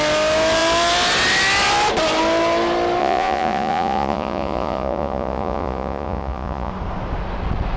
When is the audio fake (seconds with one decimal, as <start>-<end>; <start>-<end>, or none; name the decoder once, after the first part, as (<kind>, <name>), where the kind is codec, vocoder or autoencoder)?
3.0-6.7 (vocoder, Vocos)